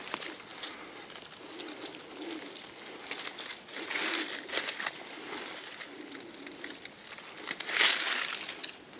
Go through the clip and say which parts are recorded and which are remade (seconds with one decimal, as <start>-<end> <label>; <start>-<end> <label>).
0.0-9.0 recorded